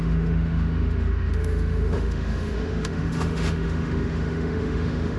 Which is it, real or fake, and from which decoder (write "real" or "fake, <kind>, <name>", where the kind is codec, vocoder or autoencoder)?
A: fake, autoencoder, DAC-VAE